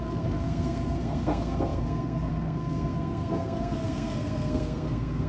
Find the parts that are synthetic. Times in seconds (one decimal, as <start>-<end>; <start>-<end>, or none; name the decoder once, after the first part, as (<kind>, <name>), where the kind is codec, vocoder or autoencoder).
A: 0.0-5.3 (codec, SNAC)